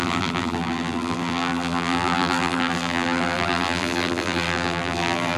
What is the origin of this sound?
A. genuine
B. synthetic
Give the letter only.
B